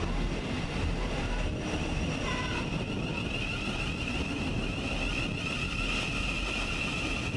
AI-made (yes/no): no